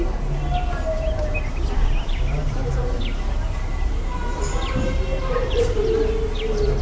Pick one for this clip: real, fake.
real